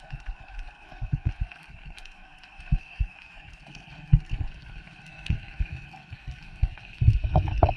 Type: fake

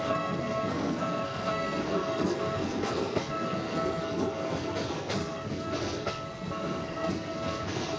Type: fake